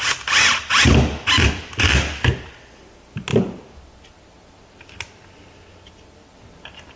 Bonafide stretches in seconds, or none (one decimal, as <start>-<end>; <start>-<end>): 0.0-7.0